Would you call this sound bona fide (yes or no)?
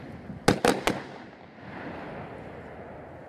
yes